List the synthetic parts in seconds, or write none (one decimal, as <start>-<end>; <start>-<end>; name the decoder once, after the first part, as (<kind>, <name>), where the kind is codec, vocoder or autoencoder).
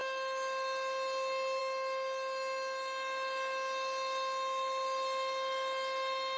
none